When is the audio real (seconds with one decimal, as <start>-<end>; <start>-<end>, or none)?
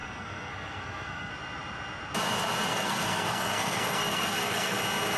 1.3-2.7; 4.8-5.2